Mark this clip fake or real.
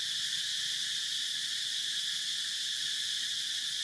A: real